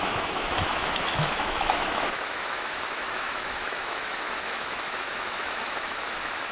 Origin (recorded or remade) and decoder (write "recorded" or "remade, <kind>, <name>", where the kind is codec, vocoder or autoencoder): remade, autoencoder, DAC-VAE